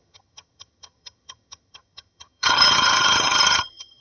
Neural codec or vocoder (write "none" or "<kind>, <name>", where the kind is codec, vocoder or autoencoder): vocoder, HiFi-GAN